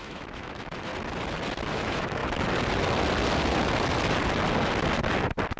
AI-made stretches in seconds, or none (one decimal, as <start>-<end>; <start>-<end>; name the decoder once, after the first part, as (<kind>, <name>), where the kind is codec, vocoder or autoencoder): 0.0-0.9 (autoencoder, DAC-VAE); 1.7-2.2